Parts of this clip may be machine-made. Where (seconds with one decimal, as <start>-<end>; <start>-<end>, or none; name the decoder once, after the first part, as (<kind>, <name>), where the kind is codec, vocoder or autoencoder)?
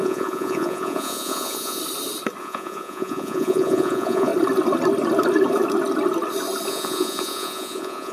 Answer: 0.0-1.8 (vocoder, Vocos); 2.4-4.3; 6.7-8.1